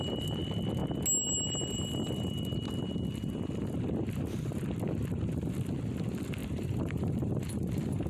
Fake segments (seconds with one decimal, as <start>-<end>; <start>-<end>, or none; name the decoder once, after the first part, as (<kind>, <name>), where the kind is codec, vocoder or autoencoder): 6.4-7.3 (vocoder, BigVGAN v2)